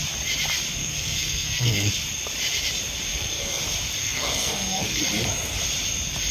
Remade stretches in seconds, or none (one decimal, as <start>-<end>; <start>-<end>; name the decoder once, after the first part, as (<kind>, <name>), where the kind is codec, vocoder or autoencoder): 0.8-1.9 (codec, SNAC); 3.1-3.6; 4.0-5.0